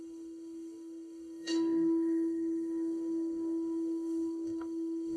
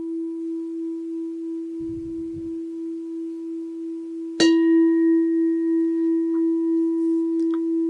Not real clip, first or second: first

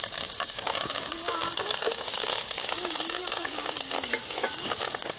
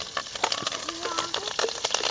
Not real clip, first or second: first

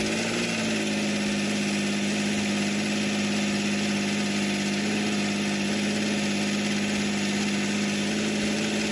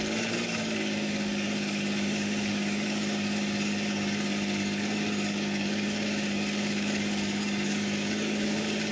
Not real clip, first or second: second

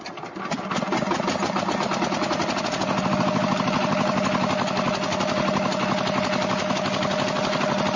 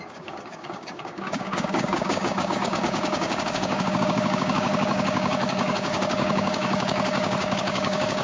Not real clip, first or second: second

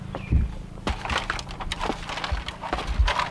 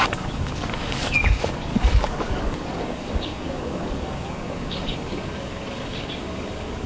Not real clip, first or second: second